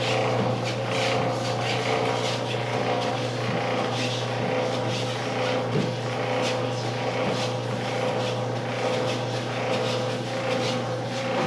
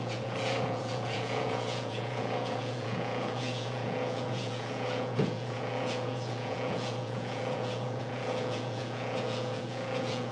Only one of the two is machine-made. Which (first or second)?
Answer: second